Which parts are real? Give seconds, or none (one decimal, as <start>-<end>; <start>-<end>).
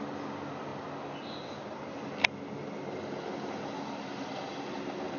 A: 0.0-5.2